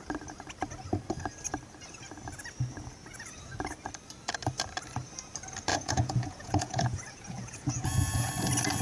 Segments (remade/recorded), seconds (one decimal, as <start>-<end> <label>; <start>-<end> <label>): 0.0-5.7 recorded; 5.7-8.3 remade; 8.3-8.8 recorded